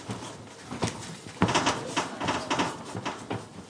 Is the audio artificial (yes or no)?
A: no